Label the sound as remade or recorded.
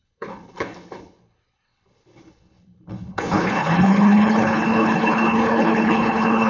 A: remade